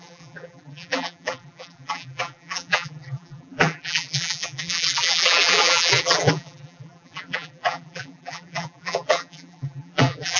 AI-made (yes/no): yes